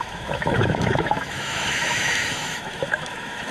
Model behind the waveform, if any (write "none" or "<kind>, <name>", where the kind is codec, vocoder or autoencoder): autoencoder, DAC-VAE